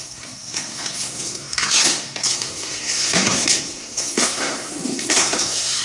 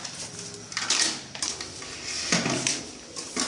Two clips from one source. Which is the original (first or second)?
second